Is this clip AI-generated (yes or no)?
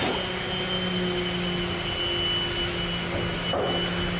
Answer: no